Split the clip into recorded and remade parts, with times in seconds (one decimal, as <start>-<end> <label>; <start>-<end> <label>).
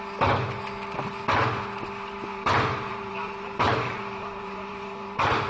0.0-2.3 recorded; 2.3-5.5 remade